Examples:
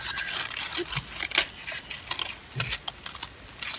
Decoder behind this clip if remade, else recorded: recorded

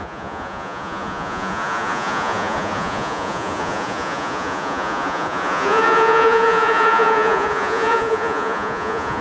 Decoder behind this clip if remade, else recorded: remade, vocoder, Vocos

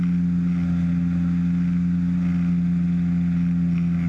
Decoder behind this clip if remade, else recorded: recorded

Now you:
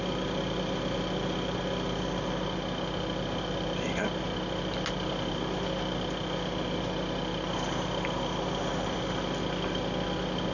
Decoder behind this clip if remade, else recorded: recorded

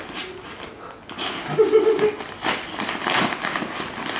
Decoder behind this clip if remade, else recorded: recorded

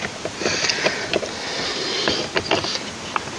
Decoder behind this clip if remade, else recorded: recorded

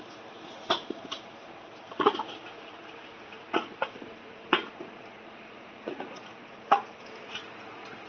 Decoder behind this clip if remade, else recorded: remade, vocoder, Vocos